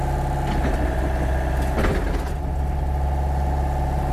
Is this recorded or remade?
recorded